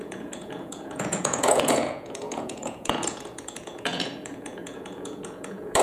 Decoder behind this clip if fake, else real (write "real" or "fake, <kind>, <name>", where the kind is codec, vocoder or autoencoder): fake, vocoder, Vocos